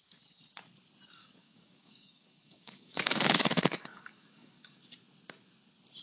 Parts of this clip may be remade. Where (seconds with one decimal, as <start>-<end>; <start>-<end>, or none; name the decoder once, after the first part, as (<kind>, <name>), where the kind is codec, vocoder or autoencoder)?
1.2-4.8 (codec, DAC)